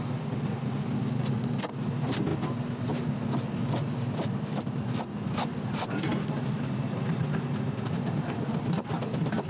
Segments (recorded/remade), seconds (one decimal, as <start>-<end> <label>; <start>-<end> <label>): 0.0-9.5 recorded